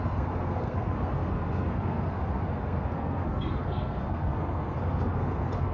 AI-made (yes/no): yes